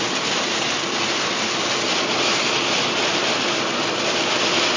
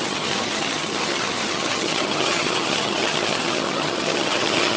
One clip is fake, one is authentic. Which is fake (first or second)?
second